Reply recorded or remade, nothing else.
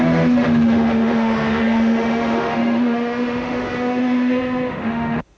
remade